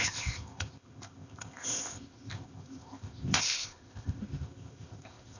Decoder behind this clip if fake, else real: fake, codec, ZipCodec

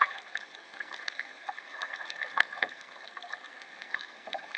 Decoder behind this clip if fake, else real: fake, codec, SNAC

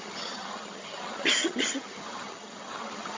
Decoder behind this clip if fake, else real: fake, vocoder, HiFi-GAN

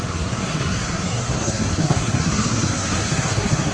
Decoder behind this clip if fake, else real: fake, codec, SNAC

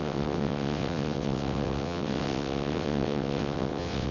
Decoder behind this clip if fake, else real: fake, vocoder, WaveNeXt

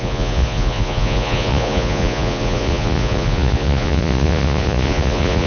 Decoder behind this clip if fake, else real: fake, vocoder, Vocos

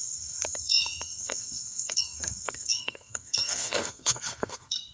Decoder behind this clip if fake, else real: fake, codec, SNAC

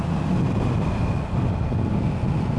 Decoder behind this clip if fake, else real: real